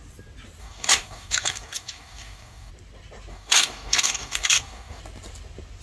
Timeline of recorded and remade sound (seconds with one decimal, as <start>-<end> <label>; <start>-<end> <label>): 0.0-0.6 recorded; 0.6-2.7 remade; 2.7-3.3 recorded; 3.3-5.0 remade; 5.0-5.8 recorded